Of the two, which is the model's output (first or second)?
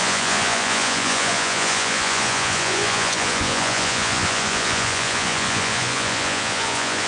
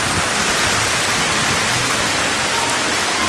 first